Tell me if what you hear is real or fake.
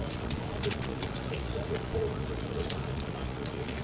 fake